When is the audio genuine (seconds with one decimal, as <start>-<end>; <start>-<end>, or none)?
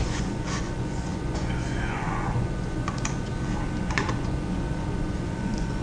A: 3.3-3.8